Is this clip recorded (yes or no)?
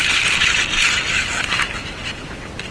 yes